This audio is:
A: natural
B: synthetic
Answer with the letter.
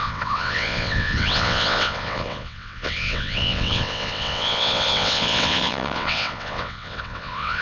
B